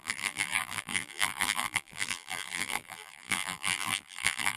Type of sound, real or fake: fake